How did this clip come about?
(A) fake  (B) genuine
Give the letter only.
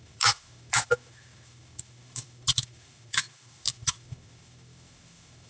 A